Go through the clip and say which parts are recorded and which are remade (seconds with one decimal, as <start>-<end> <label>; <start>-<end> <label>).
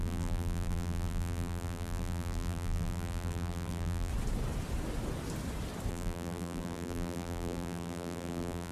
0.0-4.1 remade; 4.1-5.9 recorded; 5.9-8.7 remade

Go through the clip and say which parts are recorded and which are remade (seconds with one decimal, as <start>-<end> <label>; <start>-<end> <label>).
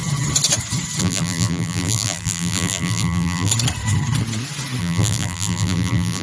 0.0-1.0 recorded; 1.0-3.5 remade; 3.5-4.8 recorded; 4.8-6.2 remade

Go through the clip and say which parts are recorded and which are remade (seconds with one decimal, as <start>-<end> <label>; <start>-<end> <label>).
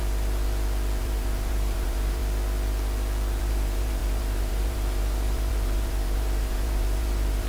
0.0-1.0 recorded; 1.0-2.2 remade; 2.2-3.4 recorded; 3.4-7.5 remade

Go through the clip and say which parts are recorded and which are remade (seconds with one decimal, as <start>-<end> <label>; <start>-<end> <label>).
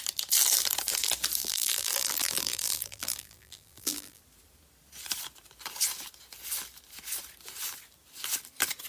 0.0-1.4 recorded; 1.4-4.2 remade; 4.2-8.9 recorded